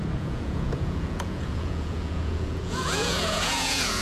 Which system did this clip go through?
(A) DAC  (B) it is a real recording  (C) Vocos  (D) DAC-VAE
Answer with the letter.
C